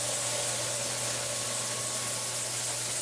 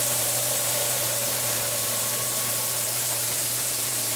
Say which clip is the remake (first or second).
second